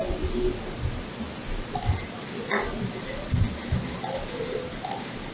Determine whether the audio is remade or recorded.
recorded